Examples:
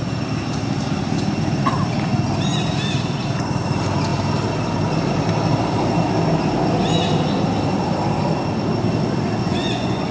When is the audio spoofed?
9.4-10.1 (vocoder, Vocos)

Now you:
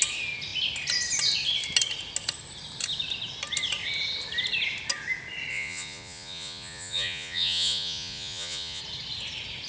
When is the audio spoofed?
5.5-8.8 (vocoder, Vocos)